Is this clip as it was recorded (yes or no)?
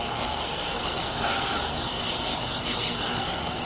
no